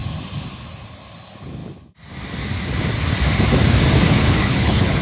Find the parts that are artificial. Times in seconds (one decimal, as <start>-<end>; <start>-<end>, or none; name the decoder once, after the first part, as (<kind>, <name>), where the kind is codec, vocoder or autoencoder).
4.2-5.0 (codec, HILCodec)